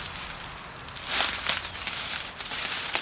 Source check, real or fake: real